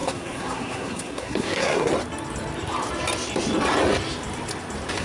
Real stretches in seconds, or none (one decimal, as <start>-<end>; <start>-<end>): 1.9-5.0